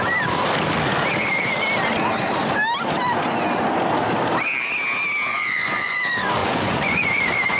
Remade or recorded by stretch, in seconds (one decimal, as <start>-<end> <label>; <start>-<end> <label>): 0.0-5.3 recorded; 5.3-6.0 remade; 6.0-6.4 recorded; 6.4-7.6 remade